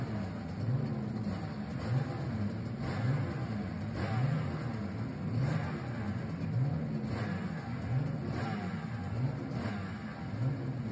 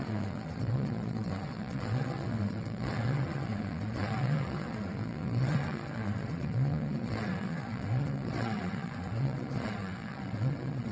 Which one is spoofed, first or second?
second